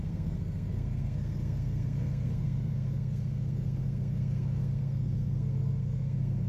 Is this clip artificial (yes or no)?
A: yes